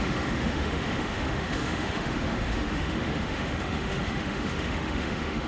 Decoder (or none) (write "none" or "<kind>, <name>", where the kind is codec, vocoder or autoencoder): autoencoder, DAC-VAE